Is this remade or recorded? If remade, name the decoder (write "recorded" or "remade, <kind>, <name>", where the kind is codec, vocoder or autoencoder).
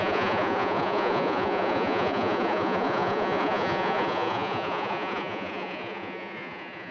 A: remade, vocoder, Vocos